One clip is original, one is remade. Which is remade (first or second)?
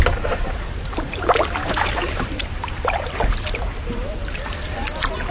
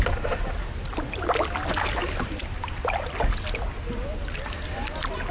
first